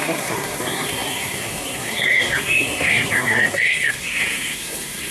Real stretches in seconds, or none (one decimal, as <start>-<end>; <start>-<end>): none